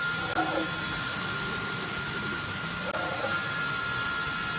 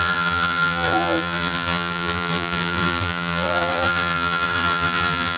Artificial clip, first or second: second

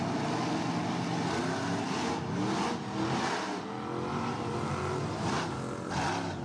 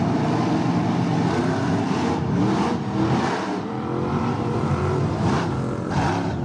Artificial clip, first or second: second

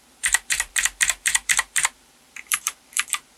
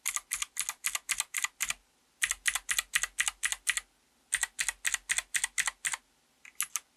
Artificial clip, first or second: first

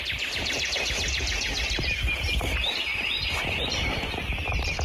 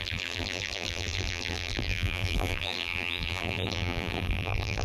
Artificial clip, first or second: second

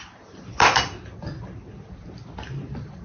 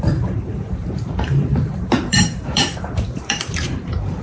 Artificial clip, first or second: second